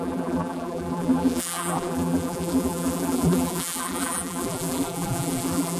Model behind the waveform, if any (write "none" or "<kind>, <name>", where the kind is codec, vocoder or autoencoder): vocoder, BigVGAN v2